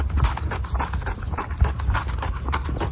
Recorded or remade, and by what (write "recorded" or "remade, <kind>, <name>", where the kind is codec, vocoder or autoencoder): recorded